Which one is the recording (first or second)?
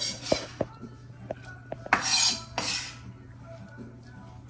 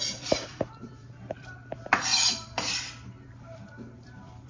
first